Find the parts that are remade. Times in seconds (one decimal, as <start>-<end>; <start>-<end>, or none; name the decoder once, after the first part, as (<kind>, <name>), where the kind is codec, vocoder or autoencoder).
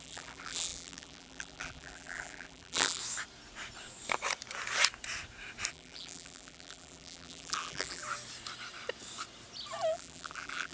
0.0-3.0 (vocoder, BigVGAN v2); 5.7-8.0; 9.9-10.7